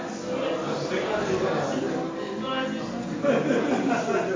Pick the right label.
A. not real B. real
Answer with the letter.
B